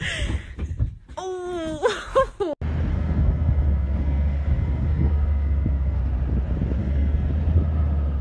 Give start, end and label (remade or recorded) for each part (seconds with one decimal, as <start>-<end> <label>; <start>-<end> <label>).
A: 0.0-2.9 recorded; 2.9-6.0 remade; 6.0-6.8 recorded; 6.8-7.3 remade; 7.3-8.2 recorded